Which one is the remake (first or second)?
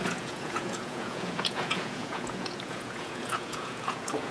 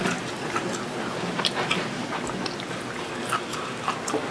first